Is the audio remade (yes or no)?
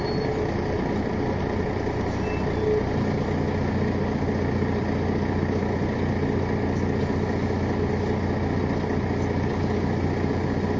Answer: no